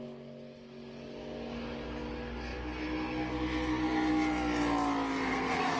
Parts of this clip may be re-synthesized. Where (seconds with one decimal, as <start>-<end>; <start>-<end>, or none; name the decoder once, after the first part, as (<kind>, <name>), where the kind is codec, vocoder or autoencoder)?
5.3-5.8 (codec, SNAC)